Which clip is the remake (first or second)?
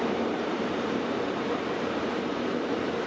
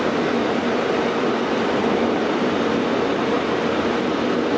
first